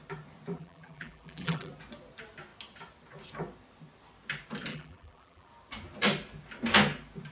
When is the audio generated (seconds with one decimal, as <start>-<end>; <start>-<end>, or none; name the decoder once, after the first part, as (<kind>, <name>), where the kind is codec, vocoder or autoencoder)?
0.5-1.7 (vocoder, BigVGAN v2); 4.7-5.5